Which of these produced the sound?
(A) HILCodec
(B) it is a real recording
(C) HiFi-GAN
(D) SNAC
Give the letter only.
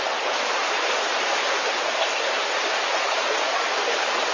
B